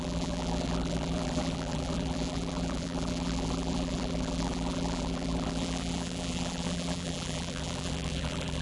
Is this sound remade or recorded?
remade